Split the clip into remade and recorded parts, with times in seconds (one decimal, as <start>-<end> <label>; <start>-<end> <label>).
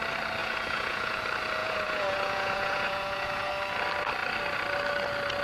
0.0-0.4 recorded; 0.4-1.2 remade; 1.2-1.6 recorded; 1.6-3.5 remade; 3.5-5.4 recorded